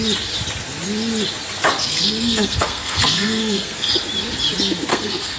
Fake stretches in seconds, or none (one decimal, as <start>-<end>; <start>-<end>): 1.8-3.9; 4.9-5.4